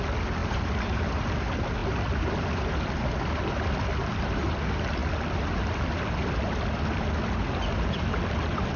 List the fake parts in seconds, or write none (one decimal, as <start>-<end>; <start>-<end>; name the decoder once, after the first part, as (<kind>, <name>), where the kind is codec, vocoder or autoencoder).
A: 0.4-1.0 (vocoder, BigVGAN v2)